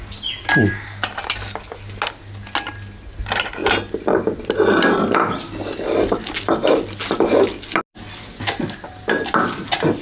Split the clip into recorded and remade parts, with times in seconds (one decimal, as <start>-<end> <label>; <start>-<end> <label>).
0.0-10.0 recorded